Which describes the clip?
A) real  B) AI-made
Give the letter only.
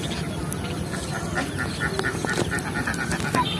A